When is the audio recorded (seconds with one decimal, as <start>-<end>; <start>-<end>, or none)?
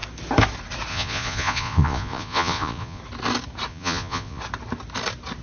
0.0-0.9; 3.0-3.7; 4.4-5.4